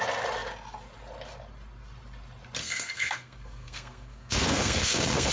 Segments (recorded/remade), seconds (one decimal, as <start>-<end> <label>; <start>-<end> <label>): 0.0-2.6 recorded; 2.6-5.3 remade